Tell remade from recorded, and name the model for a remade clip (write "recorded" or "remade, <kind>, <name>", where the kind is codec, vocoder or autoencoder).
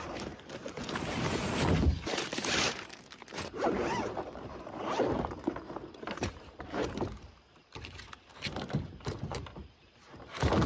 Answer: remade, vocoder, BigVGAN v2